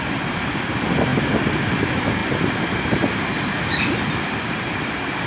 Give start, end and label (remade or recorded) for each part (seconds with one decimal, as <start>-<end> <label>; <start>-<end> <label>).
0.0-5.3 remade